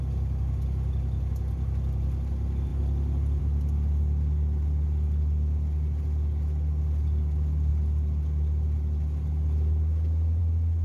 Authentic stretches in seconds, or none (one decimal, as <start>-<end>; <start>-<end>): 0.0-10.8